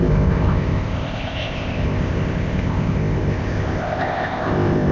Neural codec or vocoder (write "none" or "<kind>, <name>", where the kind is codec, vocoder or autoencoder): codec, ZipCodec